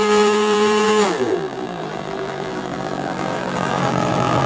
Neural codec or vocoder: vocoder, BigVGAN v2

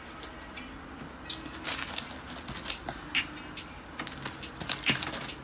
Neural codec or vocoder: none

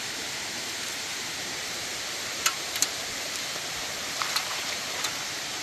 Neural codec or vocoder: vocoder, BigVGAN v2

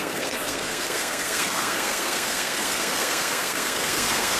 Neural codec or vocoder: codec, SNAC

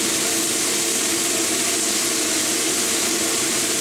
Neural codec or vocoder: none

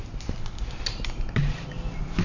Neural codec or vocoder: none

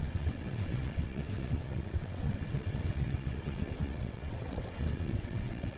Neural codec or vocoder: vocoder, WaveNeXt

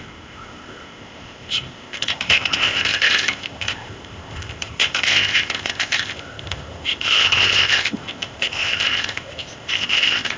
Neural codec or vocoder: codec, ZipCodec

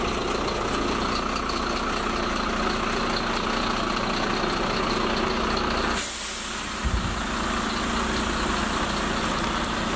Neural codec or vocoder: none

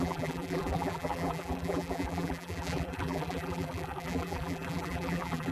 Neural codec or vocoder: vocoder, BigVGAN v2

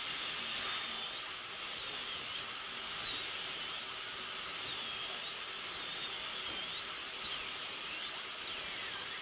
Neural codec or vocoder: none